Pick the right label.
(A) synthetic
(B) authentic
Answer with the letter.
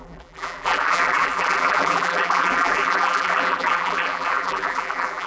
A